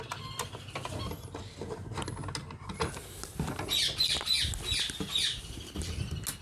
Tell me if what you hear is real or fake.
real